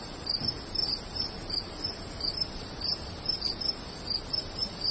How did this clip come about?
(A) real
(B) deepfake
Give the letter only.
A